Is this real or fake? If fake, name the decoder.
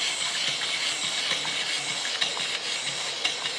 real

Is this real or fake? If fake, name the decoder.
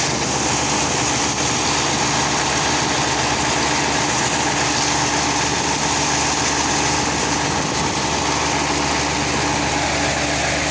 real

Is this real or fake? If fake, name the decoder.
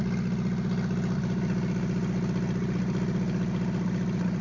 real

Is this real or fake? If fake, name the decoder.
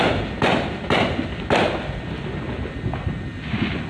real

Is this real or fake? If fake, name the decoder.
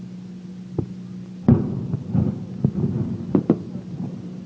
fake, vocoder, BigVGAN v2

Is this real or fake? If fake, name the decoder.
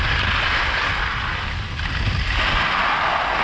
real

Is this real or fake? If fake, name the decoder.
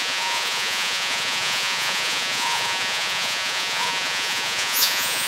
fake, vocoder, Vocos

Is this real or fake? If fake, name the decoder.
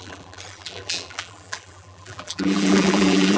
fake, vocoder, BigVGAN v2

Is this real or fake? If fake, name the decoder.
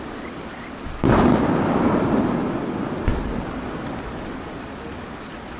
real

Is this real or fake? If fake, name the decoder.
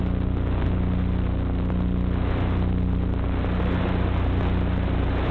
real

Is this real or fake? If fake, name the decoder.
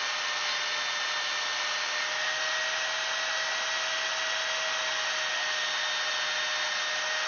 real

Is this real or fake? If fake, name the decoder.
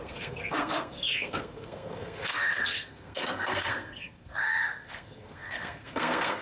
fake, codec, SNAC